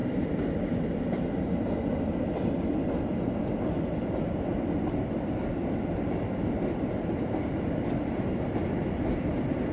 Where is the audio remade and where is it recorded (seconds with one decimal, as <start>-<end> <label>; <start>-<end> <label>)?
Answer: 0.0-9.7 remade